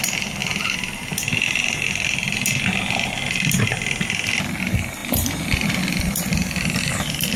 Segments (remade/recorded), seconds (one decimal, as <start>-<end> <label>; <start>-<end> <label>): 0.0-7.4 remade